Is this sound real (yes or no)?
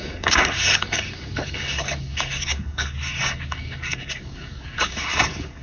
no